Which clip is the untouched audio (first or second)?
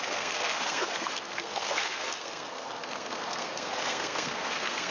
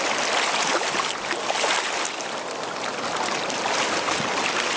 second